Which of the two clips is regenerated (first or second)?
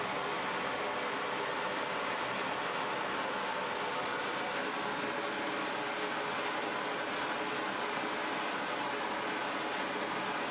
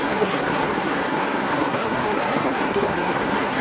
second